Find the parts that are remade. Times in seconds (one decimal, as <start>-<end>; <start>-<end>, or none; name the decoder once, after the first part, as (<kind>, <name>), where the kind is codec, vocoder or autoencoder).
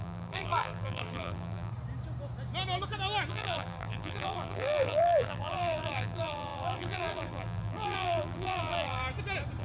0.0-1.7 (vocoder, BigVGAN v2); 3.3-9.0